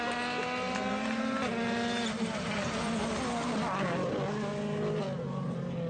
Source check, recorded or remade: recorded